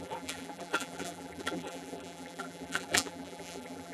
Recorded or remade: remade